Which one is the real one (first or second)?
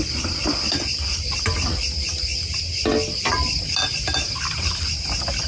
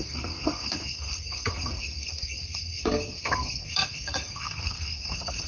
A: first